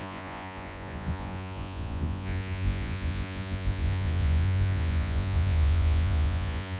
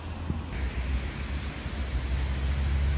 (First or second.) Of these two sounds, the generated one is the first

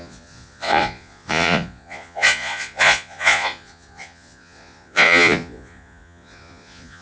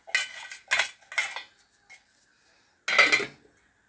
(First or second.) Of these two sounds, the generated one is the first